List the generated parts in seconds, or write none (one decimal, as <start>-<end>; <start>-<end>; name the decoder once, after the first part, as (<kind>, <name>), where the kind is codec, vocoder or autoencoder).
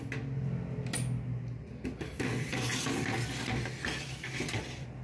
none